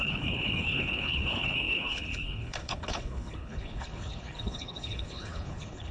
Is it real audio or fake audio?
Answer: fake